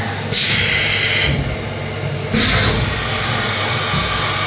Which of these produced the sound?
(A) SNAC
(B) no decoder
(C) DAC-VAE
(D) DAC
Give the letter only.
B